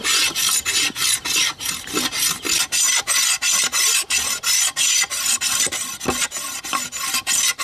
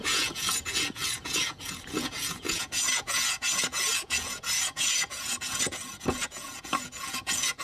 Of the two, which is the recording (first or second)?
first